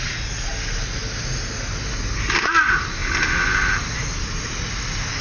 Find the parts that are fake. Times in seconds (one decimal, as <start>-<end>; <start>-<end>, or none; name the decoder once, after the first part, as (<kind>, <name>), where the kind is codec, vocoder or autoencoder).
3.0-4.0 (vocoder, BigVGAN v2)